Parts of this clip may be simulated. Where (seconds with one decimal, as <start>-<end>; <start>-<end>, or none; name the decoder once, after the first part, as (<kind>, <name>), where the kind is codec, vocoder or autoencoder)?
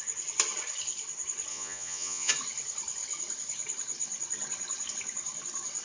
1.5-2.3 (vocoder, Vocos)